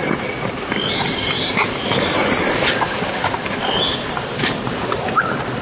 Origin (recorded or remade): recorded